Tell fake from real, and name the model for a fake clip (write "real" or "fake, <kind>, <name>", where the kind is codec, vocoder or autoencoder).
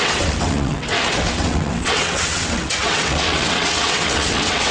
fake, vocoder, WaveNeXt